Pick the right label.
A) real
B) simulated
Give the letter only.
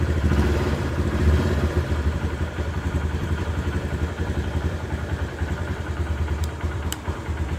B